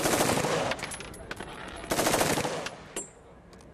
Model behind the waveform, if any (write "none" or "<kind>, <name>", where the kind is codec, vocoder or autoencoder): none